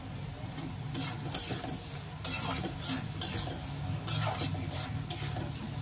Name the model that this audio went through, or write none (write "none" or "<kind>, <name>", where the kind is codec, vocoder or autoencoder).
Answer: none